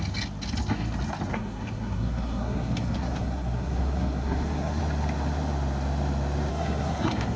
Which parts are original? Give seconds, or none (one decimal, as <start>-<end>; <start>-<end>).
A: 0.0-1.3; 4.8-6.5

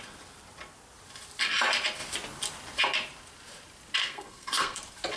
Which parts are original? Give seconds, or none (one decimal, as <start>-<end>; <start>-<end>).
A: 0.0-4.0; 4.8-5.2

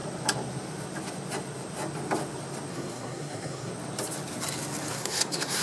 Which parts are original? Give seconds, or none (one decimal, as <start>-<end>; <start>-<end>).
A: 0.0-2.7; 3.7-4.9

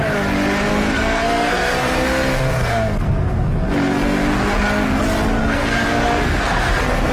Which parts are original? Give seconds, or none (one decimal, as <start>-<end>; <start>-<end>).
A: 0.0-0.7; 5.0-5.4